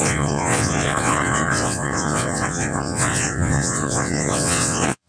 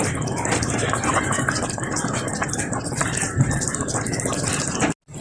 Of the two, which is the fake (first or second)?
first